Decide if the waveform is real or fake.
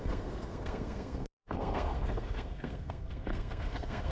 fake